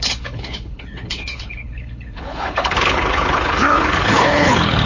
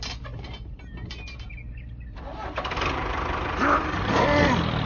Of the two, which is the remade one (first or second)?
first